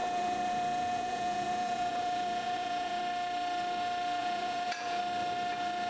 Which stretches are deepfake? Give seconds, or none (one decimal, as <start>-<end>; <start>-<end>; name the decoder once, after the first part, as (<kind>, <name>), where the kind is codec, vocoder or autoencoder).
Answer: 0.0-3.0 (vocoder, Vocos); 4.2-5.0